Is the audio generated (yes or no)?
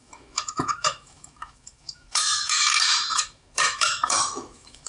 yes